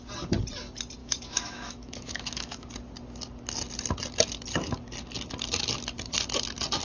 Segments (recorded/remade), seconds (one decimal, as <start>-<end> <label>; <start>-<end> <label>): 0.0-1.0 recorded; 1.0-2.7 remade; 2.7-6.8 recorded